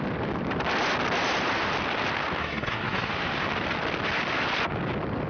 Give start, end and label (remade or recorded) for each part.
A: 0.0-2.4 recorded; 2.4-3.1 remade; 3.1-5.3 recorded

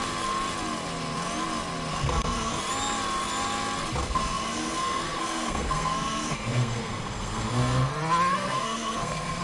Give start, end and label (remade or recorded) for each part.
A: 0.0-1.9 recorded; 1.9-2.6 remade; 2.6-4.0 recorded; 4.0-7.9 remade; 7.9-8.3 recorded; 8.3-9.4 remade